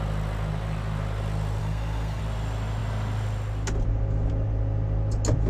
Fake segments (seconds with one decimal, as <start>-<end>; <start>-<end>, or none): 1.6-2.2